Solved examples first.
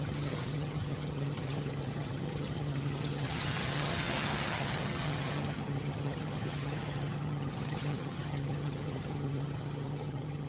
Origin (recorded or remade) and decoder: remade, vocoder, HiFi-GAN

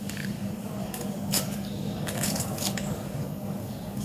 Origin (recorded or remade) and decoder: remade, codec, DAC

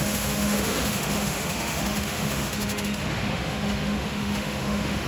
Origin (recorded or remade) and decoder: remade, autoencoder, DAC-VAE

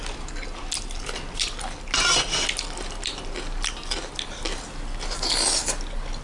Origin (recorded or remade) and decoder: recorded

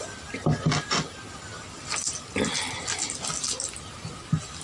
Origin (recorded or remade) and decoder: recorded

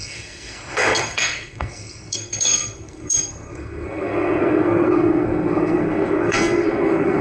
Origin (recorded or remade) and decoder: remade, codec, SNAC